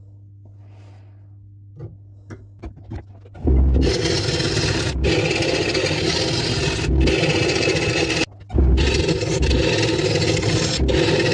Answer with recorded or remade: recorded